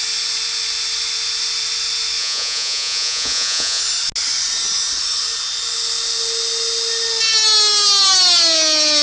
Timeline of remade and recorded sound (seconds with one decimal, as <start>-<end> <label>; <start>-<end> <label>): 0.0-2.2 recorded; 2.2-3.8 remade; 3.8-9.0 recorded